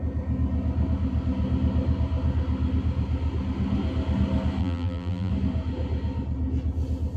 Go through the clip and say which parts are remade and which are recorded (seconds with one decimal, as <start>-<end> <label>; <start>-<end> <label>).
0.0-4.6 recorded; 4.6-5.3 remade; 5.3-7.2 recorded